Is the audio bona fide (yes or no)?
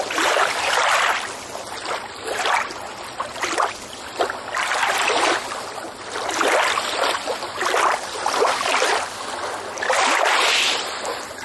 yes